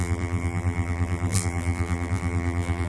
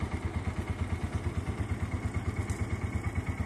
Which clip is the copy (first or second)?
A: first